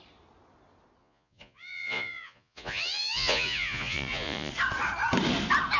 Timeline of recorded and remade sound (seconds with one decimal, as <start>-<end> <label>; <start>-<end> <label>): 0.0-1.0 recorded; 1.0-4.5 remade; 4.5-5.8 recorded